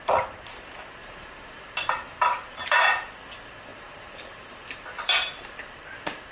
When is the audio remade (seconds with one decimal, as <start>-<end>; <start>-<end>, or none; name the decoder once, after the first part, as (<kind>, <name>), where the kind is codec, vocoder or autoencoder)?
1.0-2.9 (vocoder, BigVGAN v2); 3.7-5.3